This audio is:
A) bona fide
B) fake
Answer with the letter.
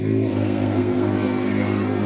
B